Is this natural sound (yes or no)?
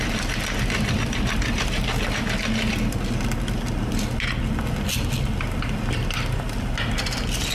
yes